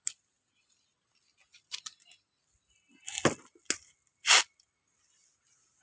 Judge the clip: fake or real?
real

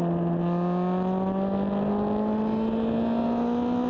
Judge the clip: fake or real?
real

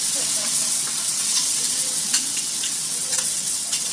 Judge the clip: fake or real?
fake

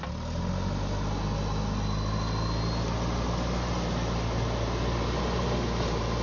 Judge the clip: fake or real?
real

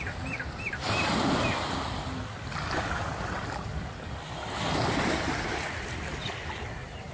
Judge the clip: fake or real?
real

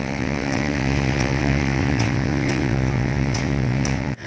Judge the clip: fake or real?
fake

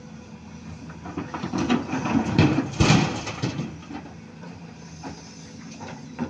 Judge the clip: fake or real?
real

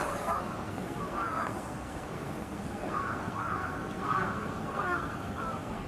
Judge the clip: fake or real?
fake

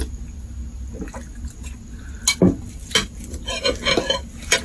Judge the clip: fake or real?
real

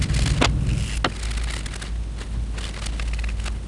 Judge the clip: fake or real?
real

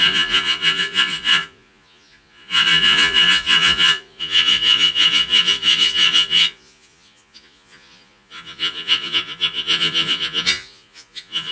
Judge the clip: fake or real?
fake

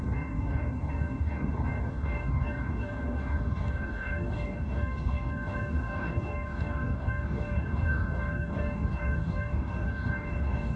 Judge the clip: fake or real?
fake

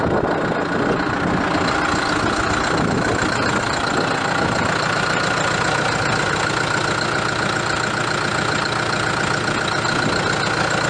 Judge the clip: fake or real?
real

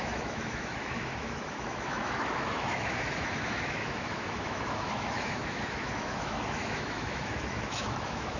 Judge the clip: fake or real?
fake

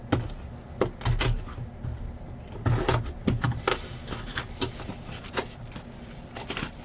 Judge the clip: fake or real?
real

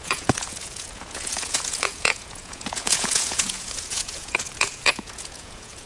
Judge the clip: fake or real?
fake